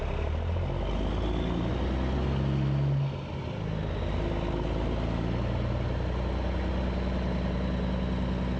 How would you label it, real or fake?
real